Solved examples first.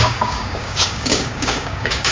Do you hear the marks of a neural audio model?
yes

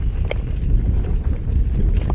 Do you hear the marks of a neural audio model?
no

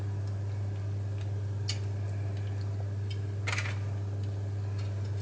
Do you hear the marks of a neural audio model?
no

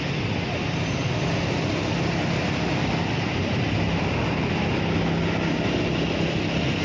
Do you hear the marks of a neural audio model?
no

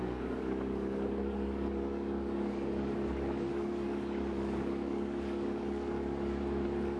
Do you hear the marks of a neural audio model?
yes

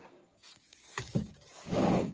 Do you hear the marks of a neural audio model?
yes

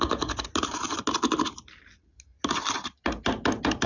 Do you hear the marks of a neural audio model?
no